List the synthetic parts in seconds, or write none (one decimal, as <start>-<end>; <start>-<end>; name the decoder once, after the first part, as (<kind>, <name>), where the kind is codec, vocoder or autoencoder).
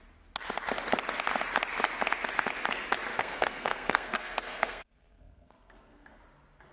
3.1-6.2 (codec, SNAC)